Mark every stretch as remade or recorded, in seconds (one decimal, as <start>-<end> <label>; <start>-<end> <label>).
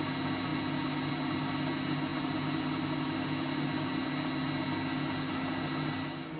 0.0-6.4 recorded